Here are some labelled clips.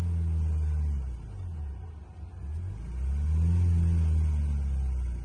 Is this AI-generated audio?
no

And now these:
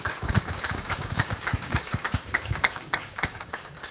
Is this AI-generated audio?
yes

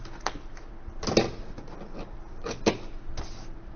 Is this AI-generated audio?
no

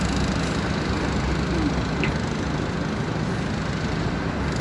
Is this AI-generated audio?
no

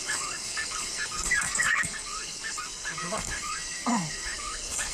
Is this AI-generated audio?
yes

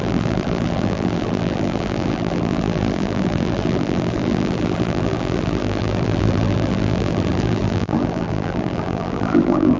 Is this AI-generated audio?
yes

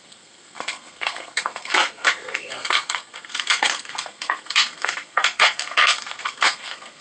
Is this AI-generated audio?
yes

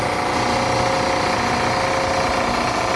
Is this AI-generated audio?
no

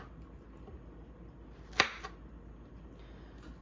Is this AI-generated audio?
no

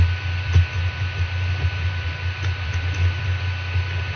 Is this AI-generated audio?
no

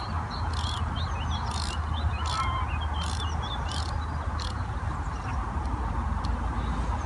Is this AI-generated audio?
no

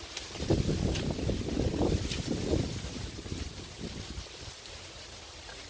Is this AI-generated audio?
no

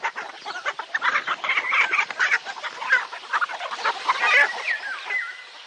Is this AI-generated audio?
no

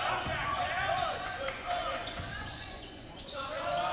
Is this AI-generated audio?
yes